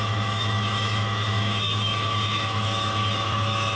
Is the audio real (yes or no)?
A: no